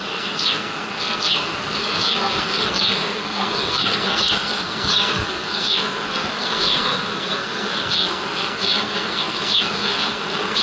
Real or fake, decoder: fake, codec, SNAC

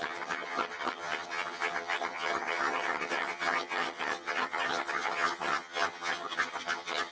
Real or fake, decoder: fake, vocoder, HiFi-GAN